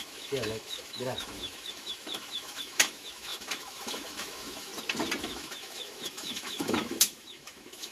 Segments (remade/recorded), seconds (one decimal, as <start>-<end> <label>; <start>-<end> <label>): 0.0-4.7 remade; 4.7-5.2 recorded; 5.2-7.9 remade